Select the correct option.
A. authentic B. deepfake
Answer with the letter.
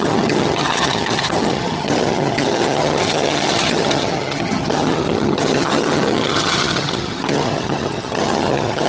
B